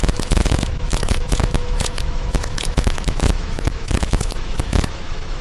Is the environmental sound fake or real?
fake